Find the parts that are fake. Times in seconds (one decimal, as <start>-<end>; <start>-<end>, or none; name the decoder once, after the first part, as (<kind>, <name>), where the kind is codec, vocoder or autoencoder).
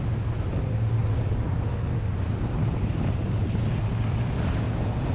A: none